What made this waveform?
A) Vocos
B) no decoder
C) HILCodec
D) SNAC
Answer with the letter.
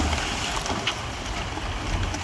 B